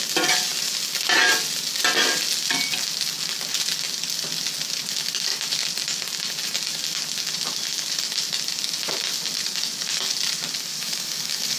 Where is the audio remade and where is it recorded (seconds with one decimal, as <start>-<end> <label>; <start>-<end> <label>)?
0.0-10.7 recorded; 10.7-11.6 remade